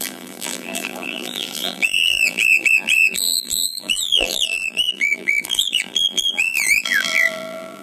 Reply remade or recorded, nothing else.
remade